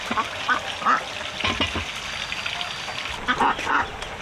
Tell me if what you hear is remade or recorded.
recorded